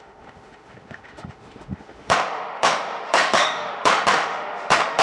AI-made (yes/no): yes